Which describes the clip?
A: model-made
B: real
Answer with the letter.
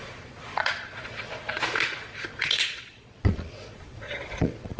A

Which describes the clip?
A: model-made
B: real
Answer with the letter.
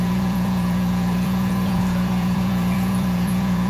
A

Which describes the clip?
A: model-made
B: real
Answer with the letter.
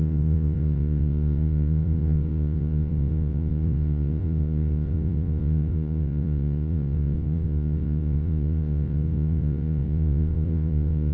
A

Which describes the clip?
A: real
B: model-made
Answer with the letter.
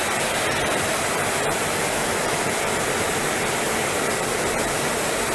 B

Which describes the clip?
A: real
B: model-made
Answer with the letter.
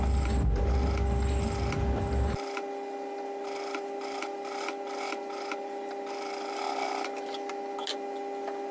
A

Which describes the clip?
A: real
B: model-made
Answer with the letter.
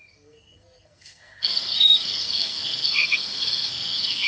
B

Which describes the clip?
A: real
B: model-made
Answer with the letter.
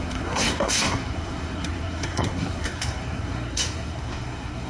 B